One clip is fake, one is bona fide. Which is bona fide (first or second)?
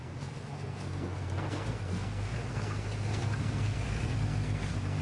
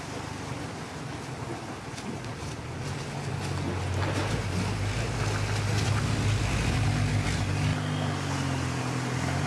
second